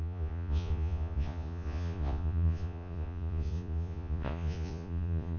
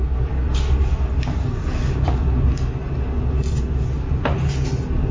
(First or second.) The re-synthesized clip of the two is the first